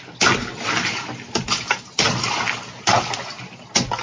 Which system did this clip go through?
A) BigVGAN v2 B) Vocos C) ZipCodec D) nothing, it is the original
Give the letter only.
D